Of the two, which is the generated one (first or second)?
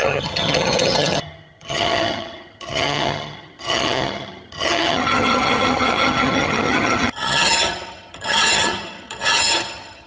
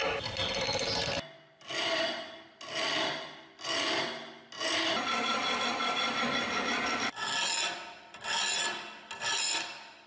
first